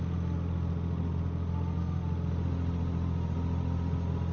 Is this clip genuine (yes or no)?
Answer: yes